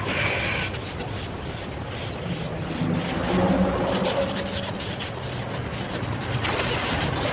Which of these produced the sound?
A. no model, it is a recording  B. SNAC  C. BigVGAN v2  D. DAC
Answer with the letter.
A